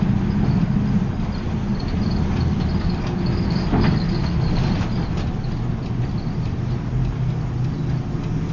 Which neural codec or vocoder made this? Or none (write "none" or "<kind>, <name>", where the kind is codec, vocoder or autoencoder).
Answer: none